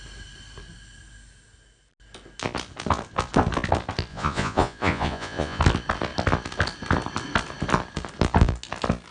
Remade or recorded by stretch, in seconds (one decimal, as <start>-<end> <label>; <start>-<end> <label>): 0.0-4.1 recorded; 4.1-5.6 remade; 5.6-9.1 recorded